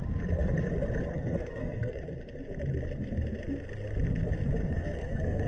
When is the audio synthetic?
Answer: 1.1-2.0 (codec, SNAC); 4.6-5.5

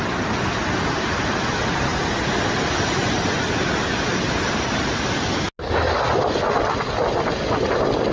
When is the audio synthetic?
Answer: none